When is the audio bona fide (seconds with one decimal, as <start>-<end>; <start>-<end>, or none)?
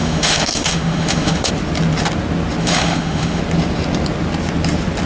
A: 1.5-2.6; 3.4-5.1